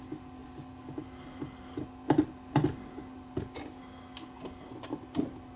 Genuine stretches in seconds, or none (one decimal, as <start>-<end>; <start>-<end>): 0.0-5.6